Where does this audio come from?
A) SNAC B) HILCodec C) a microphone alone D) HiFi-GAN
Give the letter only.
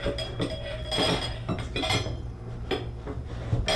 C